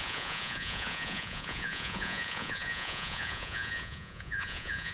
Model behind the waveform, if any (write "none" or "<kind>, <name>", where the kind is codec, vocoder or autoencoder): vocoder, Vocos